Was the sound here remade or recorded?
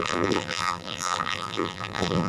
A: remade